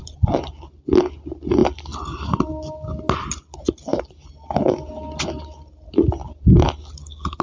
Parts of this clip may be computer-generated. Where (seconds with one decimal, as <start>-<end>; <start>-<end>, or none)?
none